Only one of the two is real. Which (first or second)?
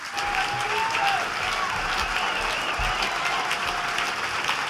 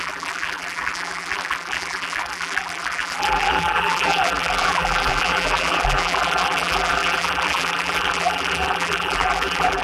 first